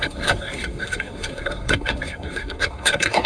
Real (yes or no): no